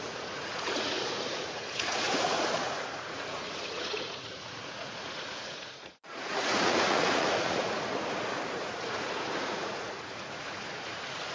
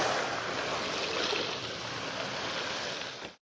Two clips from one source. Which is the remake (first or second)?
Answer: first